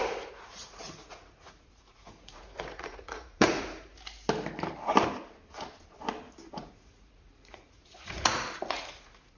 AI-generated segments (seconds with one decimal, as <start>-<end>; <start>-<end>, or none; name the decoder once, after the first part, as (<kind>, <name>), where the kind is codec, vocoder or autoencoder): 0.0-3.9 (vocoder, Vocos); 6.6-9.4